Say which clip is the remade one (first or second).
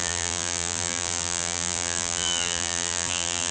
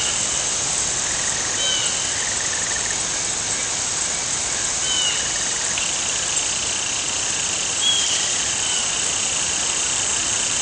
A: first